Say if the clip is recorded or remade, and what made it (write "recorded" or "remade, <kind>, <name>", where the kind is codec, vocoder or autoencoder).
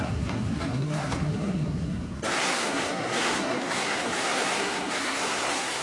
remade, codec, SNAC